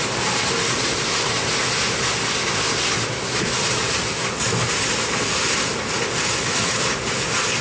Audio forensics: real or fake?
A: real